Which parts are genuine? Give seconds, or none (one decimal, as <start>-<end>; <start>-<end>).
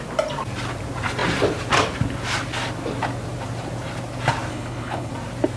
0.0-4.5; 5.1-5.6